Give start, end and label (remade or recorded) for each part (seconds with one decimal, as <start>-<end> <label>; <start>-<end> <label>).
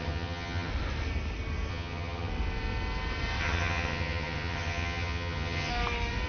0.0-0.7 remade; 0.7-1.7 recorded; 1.7-2.3 remade; 2.3-3.4 recorded; 3.4-5.7 remade; 5.7-6.3 recorded